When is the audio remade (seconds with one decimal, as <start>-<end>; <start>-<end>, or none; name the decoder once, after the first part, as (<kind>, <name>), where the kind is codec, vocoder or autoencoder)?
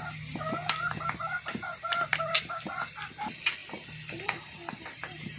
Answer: none